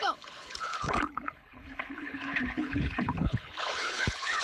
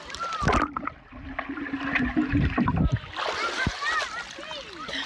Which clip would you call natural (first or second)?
second